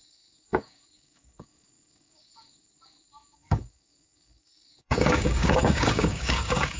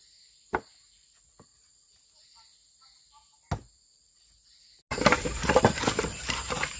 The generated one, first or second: first